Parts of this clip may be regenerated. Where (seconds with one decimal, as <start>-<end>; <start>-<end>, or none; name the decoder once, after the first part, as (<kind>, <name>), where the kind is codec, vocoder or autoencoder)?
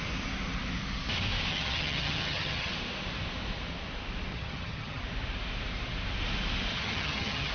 1.5-2.7 (vocoder, HiFi-GAN); 4.3-5.0; 6.7-7.5